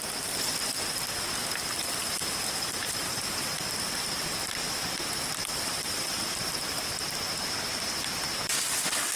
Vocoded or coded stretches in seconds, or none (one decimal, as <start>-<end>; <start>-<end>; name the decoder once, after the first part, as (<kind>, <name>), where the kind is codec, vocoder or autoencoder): 2.0-4.1 (vocoder, BigVGAN v2); 5.4-8.4